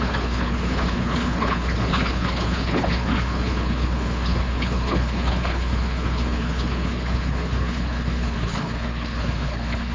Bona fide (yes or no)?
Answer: no